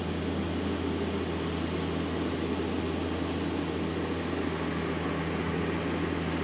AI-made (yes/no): no